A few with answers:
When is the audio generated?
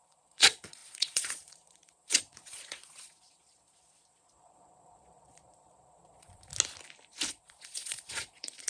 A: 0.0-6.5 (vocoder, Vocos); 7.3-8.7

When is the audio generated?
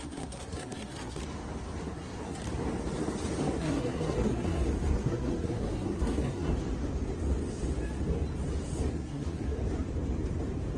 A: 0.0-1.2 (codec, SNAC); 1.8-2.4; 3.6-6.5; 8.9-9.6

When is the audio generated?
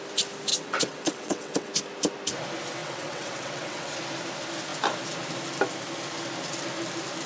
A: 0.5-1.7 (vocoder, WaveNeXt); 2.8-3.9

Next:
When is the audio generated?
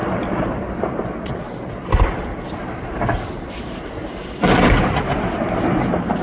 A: 0.0-6.2 (vocoder, BigVGAN v2)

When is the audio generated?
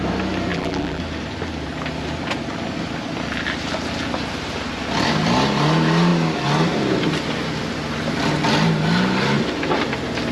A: 0.5-1.0 (vocoder, BigVGAN v2)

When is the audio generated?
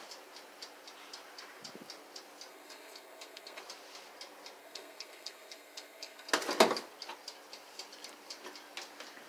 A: 2.5-3.6 (codec, SNAC); 4.6-6.3